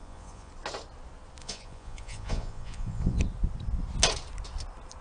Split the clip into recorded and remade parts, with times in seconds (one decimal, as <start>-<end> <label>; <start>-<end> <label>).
0.0-0.5 remade; 0.5-1.4 recorded; 1.4-3.2 remade; 3.2-5.0 recorded